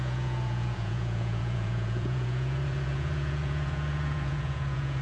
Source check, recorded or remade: remade